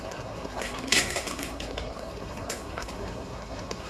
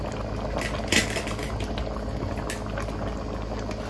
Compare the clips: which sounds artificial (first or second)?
first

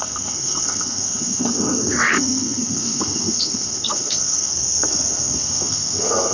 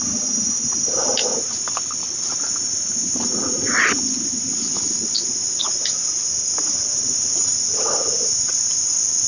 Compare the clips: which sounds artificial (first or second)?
first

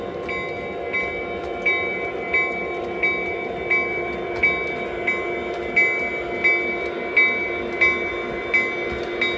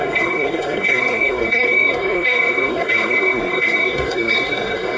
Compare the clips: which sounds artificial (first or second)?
second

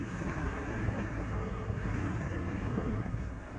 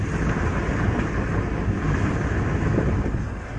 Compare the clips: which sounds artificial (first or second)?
first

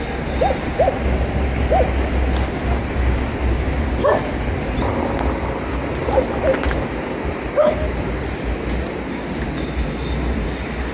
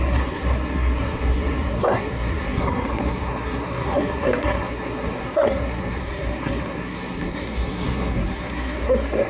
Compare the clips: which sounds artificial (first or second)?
second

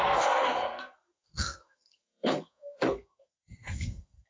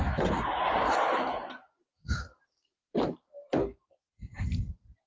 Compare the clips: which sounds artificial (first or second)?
first